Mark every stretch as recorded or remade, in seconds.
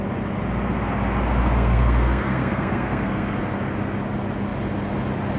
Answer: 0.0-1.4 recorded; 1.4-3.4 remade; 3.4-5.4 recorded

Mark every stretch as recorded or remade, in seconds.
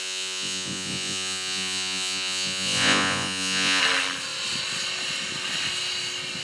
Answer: 0.0-3.8 remade; 3.8-6.4 recorded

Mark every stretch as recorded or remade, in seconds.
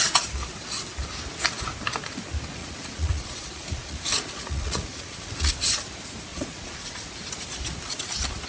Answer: 0.0-2.6 recorded; 2.6-5.5 remade; 5.5-6.3 recorded; 6.3-7.1 remade; 7.1-8.5 recorded